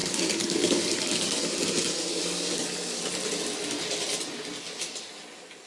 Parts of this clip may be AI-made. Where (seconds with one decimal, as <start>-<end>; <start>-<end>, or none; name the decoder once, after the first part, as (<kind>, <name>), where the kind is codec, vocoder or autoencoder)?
0.0-1.4 (codec, DAC); 2.1-3.0